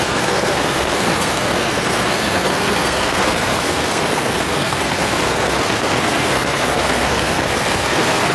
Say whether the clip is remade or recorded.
remade